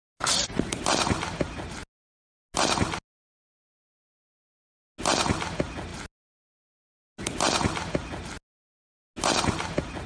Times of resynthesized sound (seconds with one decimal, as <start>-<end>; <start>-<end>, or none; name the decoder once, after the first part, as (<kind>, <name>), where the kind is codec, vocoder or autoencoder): none